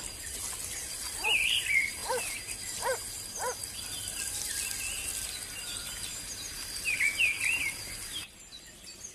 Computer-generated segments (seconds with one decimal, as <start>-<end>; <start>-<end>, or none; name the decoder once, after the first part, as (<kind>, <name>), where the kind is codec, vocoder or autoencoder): 0.0-2.0 (vocoder, BigVGAN v2); 6.9-9.1